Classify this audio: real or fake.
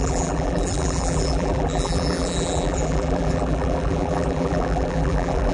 fake